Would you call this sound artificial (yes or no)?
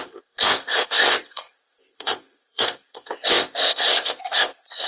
yes